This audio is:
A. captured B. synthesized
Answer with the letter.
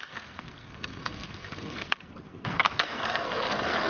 B